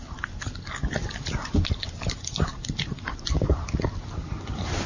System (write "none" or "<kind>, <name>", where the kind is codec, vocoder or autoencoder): none